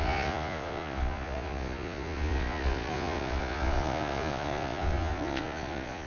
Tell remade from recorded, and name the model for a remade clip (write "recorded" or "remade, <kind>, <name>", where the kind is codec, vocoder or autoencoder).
remade, vocoder, Vocos